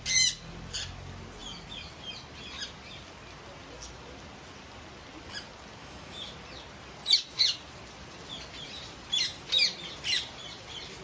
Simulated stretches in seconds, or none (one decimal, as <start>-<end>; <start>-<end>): 5.8-6.3